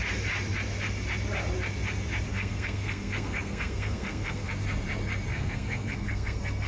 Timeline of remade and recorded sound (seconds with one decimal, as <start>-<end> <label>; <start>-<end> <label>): 0.0-2.3 recorded; 2.3-4.5 remade; 4.5-5.3 recorded; 5.3-6.7 remade